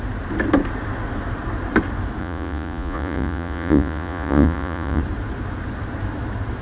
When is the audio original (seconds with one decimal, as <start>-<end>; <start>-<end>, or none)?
0.0-2.2; 5.0-6.6